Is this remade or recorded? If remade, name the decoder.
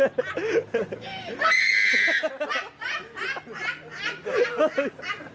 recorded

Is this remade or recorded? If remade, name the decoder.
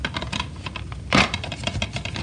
recorded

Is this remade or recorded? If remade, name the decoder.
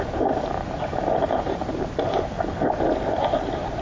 recorded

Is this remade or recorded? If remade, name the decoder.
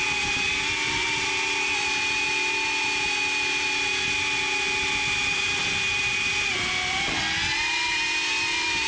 recorded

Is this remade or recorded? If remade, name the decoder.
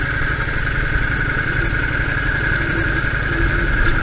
recorded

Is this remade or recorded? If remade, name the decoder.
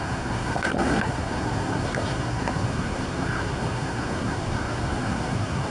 remade, codec, SNAC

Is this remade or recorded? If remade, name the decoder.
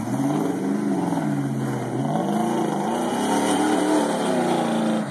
recorded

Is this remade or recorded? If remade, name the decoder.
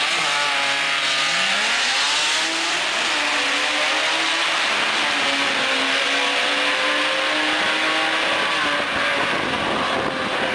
recorded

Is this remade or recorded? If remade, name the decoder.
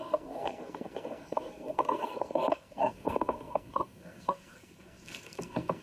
remade, codec, SNAC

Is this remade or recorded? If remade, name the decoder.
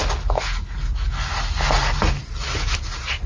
recorded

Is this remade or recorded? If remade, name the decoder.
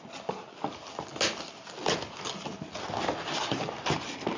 recorded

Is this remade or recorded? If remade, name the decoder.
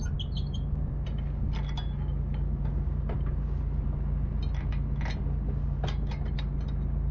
recorded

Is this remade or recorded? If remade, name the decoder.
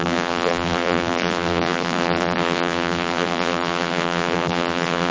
remade, vocoder, BigVGAN v2